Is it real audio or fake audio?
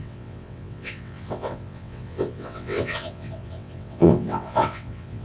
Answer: fake